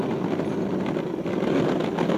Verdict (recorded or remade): recorded